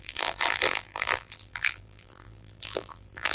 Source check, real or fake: fake